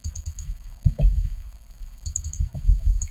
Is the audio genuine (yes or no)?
no